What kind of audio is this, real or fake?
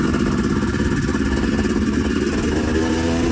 real